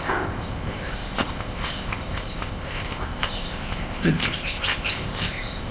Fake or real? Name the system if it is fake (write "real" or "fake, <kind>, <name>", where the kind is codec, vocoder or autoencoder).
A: fake, codec, ZipCodec